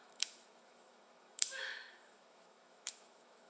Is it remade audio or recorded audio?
remade